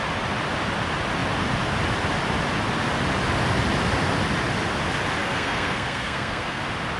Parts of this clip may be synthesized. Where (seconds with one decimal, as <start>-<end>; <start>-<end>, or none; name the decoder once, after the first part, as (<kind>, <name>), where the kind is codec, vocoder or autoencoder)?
5.2-6.6 (codec, SNAC)